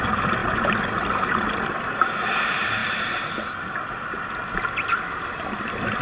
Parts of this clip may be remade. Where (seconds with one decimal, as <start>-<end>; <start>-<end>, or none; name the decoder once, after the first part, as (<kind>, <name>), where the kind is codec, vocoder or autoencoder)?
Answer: none